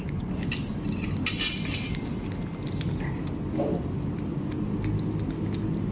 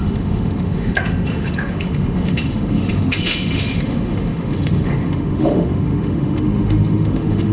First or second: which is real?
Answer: first